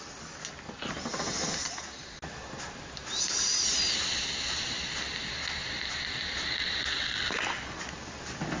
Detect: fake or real real